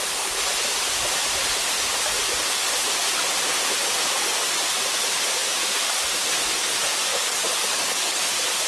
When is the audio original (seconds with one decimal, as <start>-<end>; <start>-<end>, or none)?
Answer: 0.0-7.1; 8.2-8.7